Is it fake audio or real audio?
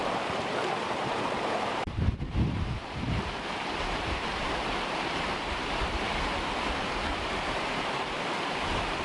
fake